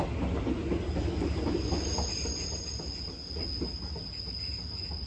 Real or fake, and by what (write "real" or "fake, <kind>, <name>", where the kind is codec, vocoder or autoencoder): real